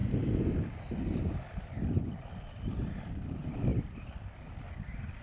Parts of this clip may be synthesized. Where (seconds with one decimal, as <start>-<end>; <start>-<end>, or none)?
none